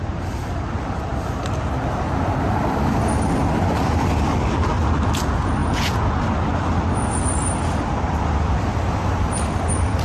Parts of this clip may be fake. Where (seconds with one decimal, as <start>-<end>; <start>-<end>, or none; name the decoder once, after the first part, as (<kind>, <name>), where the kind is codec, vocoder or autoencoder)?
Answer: 5.6-6.2 (vocoder, Vocos)